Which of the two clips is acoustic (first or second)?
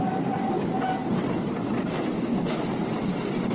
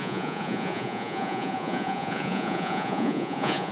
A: first